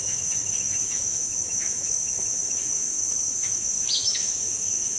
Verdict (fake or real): fake